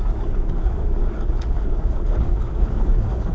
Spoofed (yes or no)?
yes